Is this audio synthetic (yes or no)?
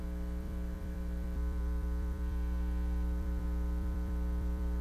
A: yes